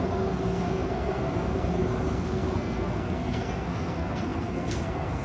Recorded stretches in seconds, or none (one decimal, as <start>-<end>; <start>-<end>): none

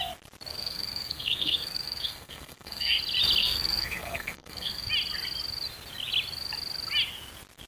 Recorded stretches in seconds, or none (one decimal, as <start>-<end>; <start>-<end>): 0.0-0.5; 3.0-3.4; 4.9-7.7

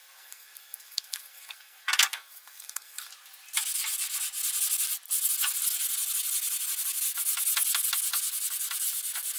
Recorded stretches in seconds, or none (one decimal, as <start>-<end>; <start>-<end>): 3.1-9.4